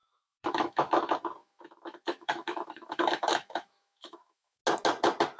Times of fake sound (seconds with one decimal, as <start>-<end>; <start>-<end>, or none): 0.0-0.9; 1.4-4.6